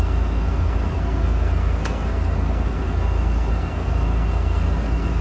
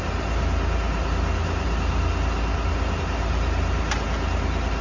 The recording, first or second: second